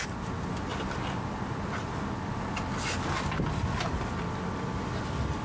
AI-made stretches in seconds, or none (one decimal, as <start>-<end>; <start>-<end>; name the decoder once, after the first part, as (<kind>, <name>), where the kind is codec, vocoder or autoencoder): none